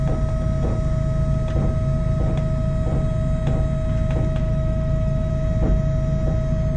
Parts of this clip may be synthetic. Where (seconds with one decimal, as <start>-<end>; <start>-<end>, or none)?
4.4-5.3